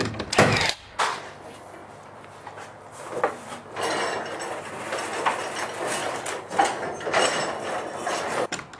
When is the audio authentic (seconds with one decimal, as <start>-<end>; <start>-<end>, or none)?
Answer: 0.0-8.8

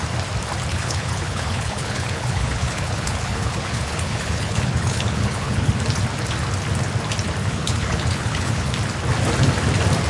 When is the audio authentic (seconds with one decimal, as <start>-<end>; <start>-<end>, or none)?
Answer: 0.0-0.7; 5.7-7.4; 8.7-10.1

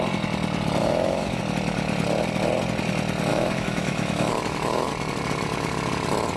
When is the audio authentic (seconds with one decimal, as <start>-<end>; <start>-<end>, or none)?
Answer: 0.0-0.8; 1.4-3.3; 4.9-6.4